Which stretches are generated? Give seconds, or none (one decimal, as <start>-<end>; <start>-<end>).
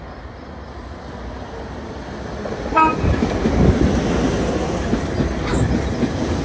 none